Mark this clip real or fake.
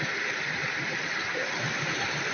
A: real